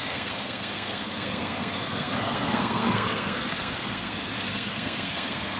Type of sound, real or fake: fake